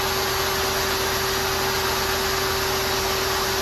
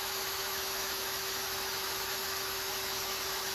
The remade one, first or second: second